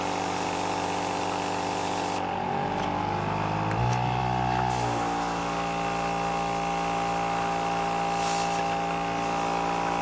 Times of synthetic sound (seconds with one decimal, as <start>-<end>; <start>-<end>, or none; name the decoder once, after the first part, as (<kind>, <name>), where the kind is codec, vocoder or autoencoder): none